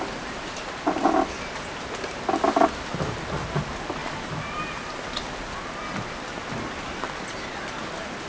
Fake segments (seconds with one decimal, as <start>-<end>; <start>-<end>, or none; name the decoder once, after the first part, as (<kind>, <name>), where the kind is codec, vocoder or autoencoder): none